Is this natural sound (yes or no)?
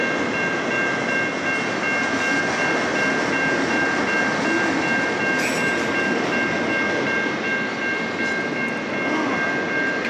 yes